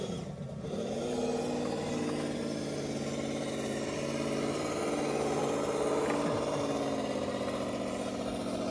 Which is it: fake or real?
real